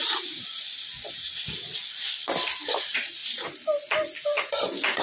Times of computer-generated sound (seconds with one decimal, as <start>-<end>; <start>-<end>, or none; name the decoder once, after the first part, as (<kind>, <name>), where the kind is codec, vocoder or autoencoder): none